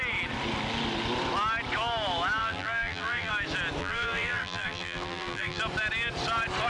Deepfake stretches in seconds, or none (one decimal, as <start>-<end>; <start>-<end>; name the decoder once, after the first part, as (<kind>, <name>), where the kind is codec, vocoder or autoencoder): 2.4-3.3 (vocoder, BigVGAN v2); 3.8-5.6